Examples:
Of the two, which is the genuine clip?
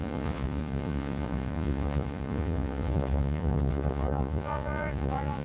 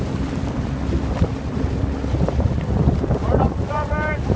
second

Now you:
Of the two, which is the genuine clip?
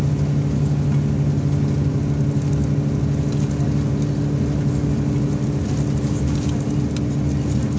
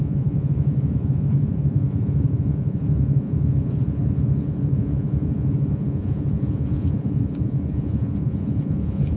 first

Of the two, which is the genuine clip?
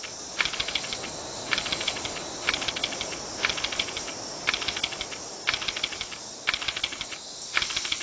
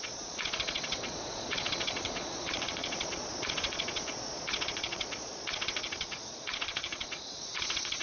first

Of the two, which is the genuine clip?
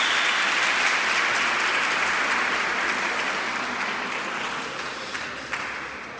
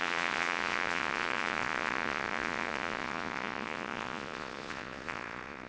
first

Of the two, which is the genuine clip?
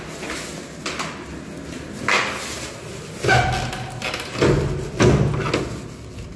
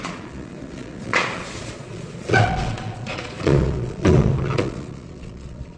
first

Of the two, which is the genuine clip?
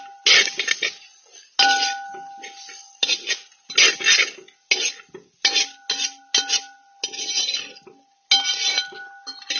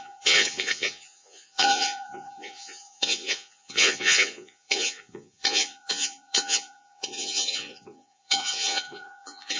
first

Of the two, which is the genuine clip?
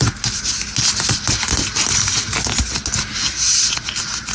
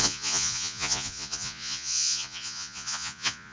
first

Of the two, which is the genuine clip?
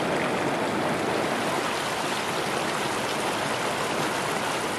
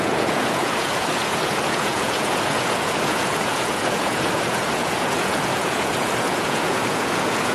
first